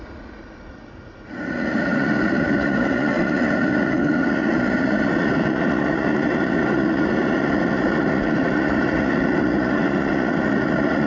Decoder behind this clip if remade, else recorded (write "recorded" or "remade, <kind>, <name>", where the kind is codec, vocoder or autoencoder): remade, vocoder, Vocos